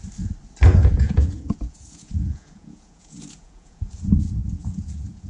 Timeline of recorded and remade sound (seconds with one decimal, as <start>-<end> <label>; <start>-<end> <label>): 0.0-0.7 recorded; 0.7-3.9 remade; 3.9-4.4 recorded; 4.4-5.3 remade